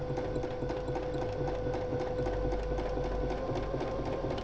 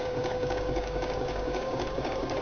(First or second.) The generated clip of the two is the second